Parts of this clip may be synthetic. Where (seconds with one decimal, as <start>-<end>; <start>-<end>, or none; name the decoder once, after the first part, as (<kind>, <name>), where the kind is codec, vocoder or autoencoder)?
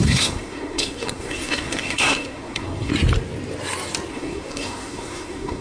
0.0-2.9 (codec, SNAC); 4.1-5.6